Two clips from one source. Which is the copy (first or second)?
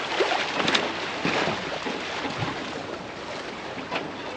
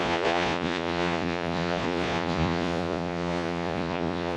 second